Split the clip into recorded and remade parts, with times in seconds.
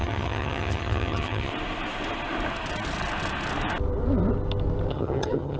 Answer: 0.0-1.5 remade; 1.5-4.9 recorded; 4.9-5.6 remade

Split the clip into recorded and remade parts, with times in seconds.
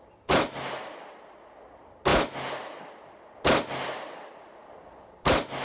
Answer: 0.0-5.6 recorded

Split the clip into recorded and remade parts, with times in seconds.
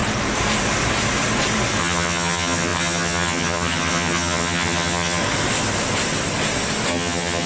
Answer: 0.0-1.8 recorded; 1.8-5.2 remade; 5.2-6.9 recorded; 6.9-7.5 remade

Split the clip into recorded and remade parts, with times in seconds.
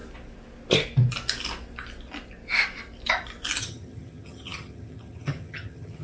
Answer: 0.0-3.6 recorded; 3.6-6.0 remade